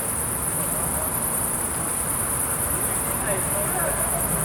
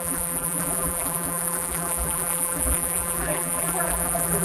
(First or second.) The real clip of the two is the first